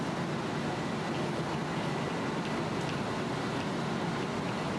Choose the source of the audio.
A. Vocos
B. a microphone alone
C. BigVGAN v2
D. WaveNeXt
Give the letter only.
B